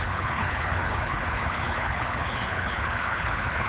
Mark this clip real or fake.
fake